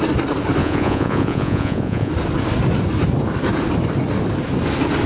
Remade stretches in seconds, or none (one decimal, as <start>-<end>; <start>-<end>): 0.6-2.1